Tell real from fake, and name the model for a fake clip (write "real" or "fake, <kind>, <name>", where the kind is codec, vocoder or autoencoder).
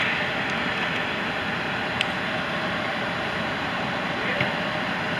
real